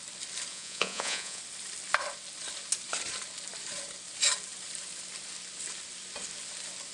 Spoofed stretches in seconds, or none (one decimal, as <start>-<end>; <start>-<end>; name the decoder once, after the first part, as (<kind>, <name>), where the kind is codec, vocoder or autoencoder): 0.5-1.4 (vocoder, Vocos)